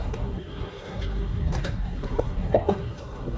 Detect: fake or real fake